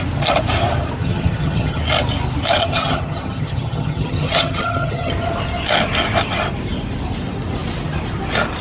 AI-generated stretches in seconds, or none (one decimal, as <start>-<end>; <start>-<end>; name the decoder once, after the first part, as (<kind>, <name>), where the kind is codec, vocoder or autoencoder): 1.0-1.8 (vocoder, HiFi-GAN); 2.6-5.1